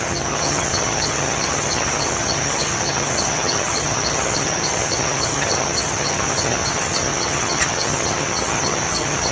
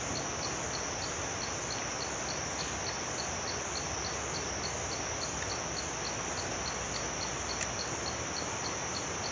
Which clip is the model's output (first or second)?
first